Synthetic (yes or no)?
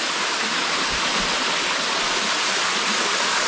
no